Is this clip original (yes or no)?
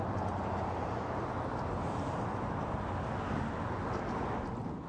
yes